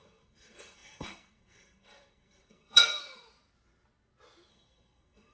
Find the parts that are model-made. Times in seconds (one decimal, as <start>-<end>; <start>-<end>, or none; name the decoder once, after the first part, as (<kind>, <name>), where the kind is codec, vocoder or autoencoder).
0.0-2.9 (codec, SNAC); 4.5-5.3